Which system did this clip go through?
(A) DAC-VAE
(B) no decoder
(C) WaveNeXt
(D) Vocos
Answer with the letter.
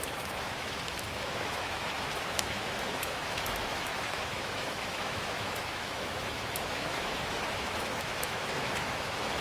A